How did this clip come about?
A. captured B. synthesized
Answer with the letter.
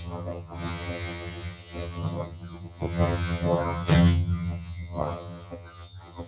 B